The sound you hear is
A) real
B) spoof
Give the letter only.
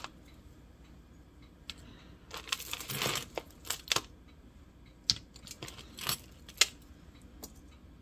A